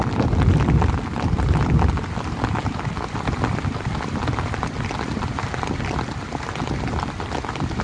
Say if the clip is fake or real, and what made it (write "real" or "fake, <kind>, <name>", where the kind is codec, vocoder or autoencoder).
real